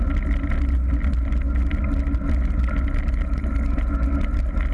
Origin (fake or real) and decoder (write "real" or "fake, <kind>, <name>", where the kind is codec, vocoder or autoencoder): real